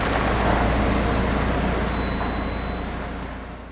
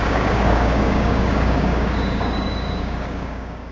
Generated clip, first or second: second